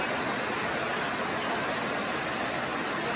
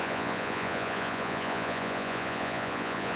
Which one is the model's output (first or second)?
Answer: second